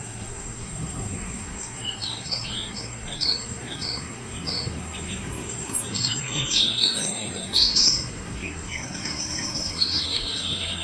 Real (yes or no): no